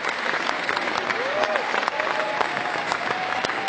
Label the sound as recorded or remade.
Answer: remade